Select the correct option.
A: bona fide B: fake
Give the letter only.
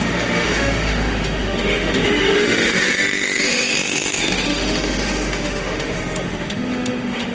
B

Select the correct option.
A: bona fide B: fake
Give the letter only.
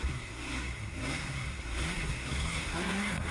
B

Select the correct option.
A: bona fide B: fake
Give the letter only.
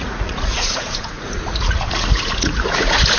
B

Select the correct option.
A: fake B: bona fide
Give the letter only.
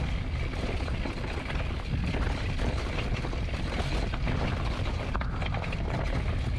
B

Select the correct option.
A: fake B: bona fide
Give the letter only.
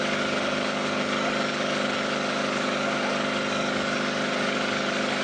A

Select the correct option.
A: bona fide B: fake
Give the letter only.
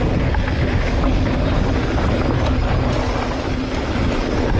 A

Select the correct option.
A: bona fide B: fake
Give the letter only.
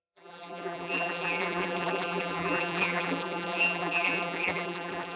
B